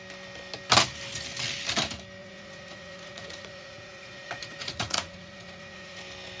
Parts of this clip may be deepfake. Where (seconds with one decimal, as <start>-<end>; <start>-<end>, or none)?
2.2-6.0